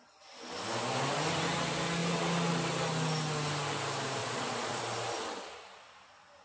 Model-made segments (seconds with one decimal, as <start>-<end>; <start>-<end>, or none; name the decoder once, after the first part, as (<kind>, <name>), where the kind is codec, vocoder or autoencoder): 4.2-4.8 (vocoder, Vocos)